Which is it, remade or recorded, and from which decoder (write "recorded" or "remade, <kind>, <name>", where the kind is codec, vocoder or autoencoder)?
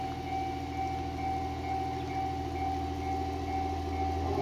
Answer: recorded